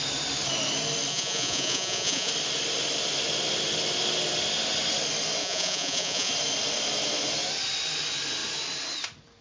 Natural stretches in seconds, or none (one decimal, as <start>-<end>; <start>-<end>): 0.0-1.1; 2.3-5.4; 6.3-9.4